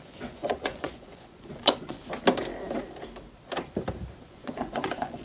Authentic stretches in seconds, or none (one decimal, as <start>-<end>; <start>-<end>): 2.0-4.3